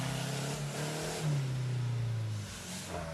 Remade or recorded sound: recorded